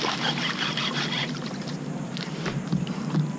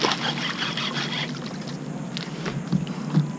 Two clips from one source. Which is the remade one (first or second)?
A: first